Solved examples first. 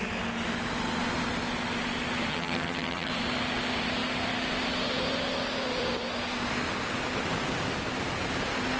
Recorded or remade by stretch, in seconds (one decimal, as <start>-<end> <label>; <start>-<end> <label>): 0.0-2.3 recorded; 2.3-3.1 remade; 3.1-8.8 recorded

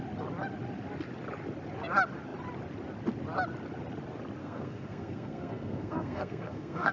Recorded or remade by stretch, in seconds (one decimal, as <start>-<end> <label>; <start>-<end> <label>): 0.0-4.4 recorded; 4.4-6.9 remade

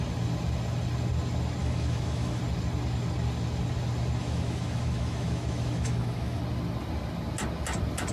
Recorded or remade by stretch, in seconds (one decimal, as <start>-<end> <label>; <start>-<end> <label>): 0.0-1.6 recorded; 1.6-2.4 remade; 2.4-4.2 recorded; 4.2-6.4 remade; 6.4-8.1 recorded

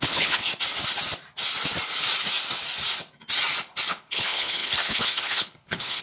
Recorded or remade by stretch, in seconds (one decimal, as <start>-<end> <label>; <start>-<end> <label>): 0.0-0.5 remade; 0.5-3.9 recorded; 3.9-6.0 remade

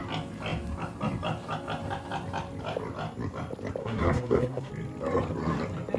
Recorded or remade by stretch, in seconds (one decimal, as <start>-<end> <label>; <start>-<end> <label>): 0.0-3.8 recorded; 3.8-4.7 remade; 4.7-6.0 recorded

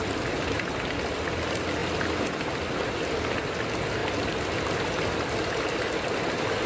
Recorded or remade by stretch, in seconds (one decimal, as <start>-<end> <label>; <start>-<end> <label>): 0.0-4.0 recorded; 4.0-5.8 remade; 5.8-6.7 recorded